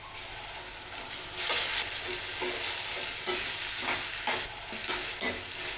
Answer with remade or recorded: recorded